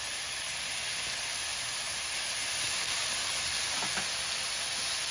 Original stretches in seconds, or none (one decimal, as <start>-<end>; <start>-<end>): 0.0-5.1